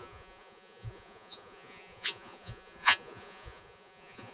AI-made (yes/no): yes